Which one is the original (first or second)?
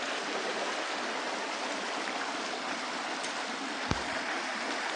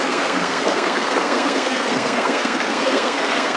first